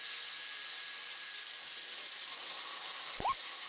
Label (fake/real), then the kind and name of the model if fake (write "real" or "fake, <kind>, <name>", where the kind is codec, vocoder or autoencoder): real